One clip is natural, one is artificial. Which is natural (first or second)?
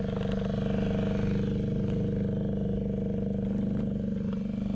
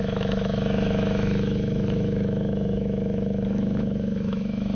first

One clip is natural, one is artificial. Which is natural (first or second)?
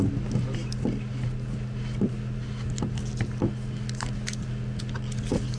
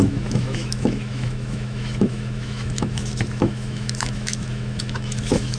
first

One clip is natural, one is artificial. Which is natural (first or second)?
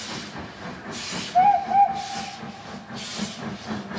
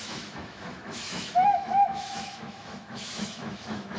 first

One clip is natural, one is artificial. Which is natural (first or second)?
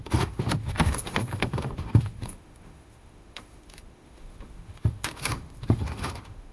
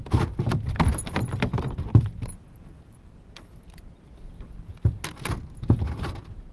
second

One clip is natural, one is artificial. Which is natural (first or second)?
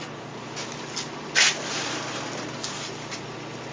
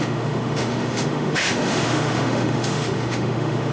first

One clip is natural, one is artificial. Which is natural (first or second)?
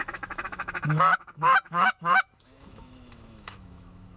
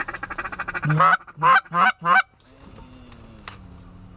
second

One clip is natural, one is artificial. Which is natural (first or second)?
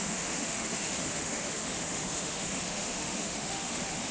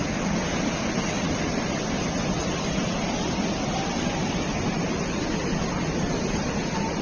second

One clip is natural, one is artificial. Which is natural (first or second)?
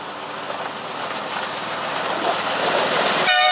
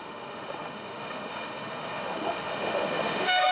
first